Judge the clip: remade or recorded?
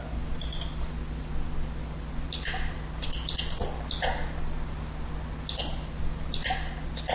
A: recorded